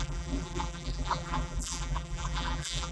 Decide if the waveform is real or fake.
fake